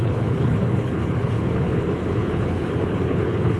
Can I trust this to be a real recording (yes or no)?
no